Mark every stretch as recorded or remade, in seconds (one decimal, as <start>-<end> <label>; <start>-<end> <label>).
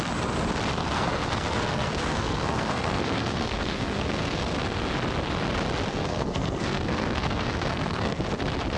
0.0-0.8 recorded; 0.8-4.9 remade; 4.9-5.9 recorded; 5.9-8.2 remade; 8.2-8.8 recorded